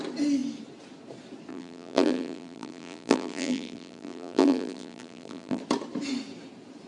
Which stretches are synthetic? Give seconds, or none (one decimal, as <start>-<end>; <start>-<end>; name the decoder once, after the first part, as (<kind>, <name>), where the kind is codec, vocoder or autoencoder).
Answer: 1.5-5.6 (vocoder, BigVGAN v2)